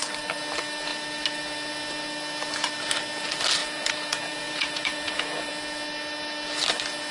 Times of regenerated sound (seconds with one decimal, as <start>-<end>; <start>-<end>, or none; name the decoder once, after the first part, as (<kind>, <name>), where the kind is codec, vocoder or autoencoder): 3.6-5.5 (vocoder, Vocos)